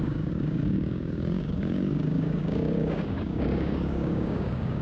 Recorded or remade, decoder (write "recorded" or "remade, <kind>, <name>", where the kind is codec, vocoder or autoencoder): remade, codec, DAC